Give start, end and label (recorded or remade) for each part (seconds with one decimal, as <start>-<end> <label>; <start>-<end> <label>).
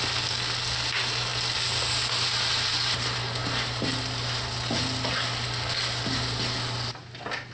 0.0-7.5 recorded